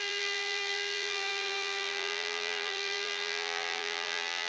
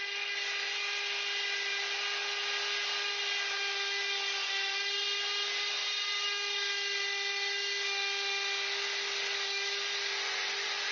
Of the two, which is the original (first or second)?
second